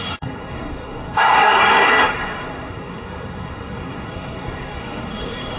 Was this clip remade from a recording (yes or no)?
yes